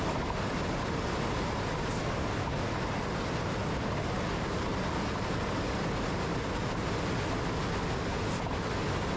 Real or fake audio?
real